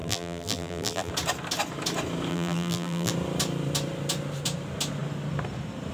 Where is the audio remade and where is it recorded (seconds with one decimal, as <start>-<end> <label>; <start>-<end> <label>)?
0.0-1.1 remade; 1.1-2.3 recorded; 2.3-3.1 remade; 3.1-5.9 recorded